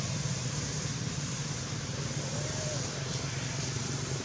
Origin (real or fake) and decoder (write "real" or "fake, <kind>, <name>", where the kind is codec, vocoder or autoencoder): fake, vocoder, BigVGAN v2